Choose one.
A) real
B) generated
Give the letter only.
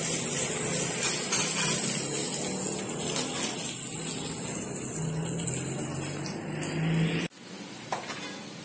A